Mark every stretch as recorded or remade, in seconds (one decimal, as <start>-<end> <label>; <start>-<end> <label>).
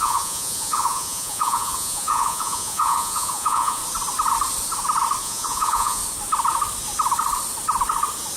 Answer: 0.0-3.8 remade; 3.8-5.2 recorded; 5.2-6.0 remade; 6.0-8.4 recorded